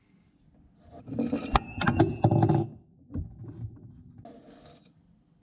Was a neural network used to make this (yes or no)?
no